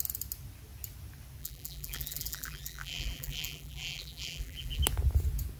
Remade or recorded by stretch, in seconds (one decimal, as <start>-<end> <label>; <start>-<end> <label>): 0.0-1.4 recorded; 1.4-4.8 remade; 4.8-5.6 recorded